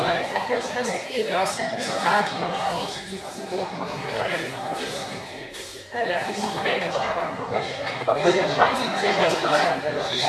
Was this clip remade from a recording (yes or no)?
yes